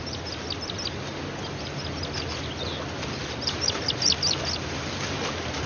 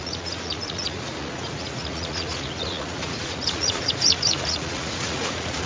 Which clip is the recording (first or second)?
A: first